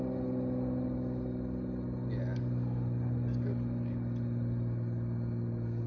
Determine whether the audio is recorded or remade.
recorded